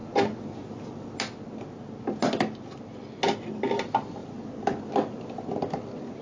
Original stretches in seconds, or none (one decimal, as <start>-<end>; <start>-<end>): 0.0-6.2